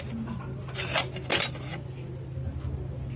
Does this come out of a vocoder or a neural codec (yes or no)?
no